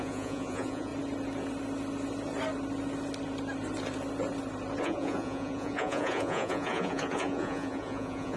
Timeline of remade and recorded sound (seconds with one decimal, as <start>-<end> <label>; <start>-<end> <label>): 0.0-0.9 remade; 0.9-4.8 recorded; 4.8-8.4 remade